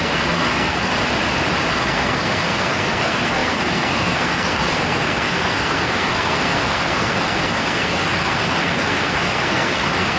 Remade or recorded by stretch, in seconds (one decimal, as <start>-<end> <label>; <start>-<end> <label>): 0.0-0.9 remade; 0.9-1.7 recorded; 1.7-10.2 remade